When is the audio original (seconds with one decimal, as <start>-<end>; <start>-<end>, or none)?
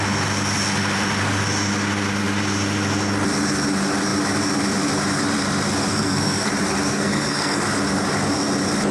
0.0-5.9; 6.5-6.9; 7.6-8.9